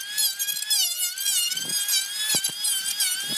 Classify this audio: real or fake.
real